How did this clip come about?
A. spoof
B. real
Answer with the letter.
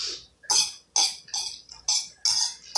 B